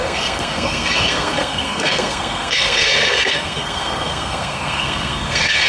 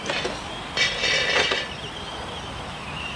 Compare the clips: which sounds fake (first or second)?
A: first